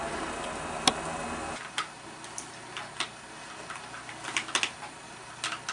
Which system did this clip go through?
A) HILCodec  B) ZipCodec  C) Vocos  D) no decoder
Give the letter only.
D